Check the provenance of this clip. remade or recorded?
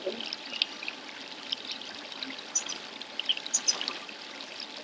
recorded